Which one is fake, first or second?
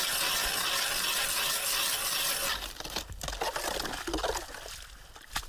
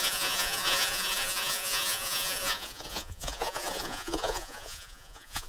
second